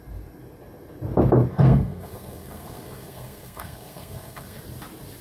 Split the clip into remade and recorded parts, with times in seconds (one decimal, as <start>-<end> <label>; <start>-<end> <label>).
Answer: 0.0-1.5 recorded; 1.5-4.6 remade; 4.6-5.2 recorded